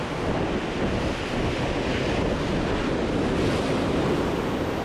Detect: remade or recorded recorded